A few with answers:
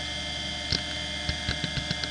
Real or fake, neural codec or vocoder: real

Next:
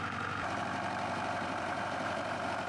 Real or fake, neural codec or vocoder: fake, vocoder, BigVGAN v2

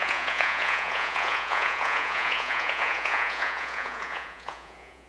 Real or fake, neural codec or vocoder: fake, vocoder, Vocos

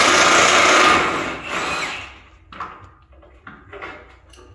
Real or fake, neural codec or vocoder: real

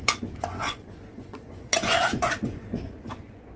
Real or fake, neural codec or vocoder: fake, vocoder, Vocos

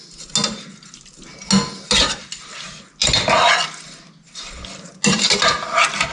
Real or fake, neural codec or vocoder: real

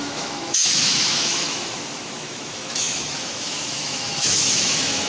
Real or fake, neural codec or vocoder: fake, autoencoder, DAC-VAE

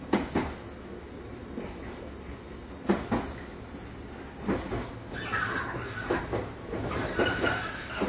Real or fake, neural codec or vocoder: real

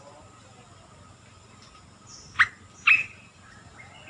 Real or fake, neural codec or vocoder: real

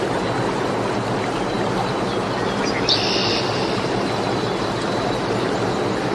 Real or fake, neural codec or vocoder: real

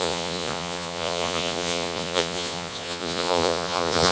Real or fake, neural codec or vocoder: fake, vocoder, Vocos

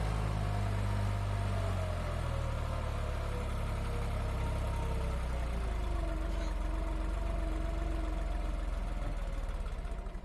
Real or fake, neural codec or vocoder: real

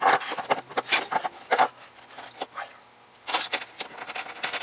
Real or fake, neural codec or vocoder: real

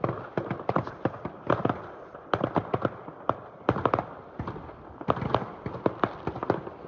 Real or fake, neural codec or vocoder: real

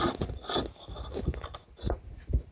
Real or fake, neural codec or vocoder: real